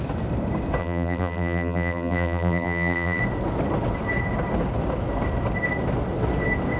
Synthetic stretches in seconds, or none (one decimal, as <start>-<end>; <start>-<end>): 0.8-3.2